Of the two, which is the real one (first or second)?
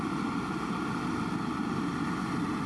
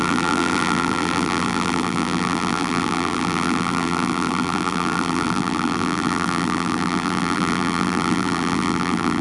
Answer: first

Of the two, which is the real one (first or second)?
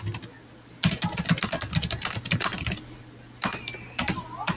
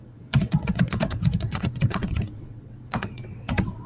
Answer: first